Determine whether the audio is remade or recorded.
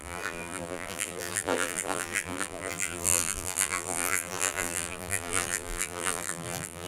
remade